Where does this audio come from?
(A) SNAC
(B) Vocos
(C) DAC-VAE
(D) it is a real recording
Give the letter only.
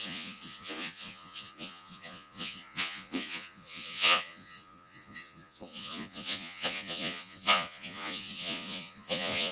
B